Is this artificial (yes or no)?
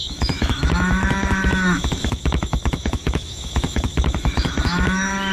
yes